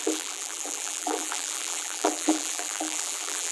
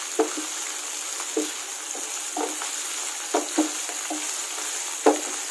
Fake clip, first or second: first